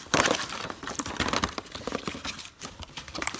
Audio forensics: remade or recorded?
remade